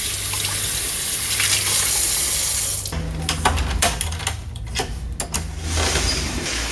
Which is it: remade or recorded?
recorded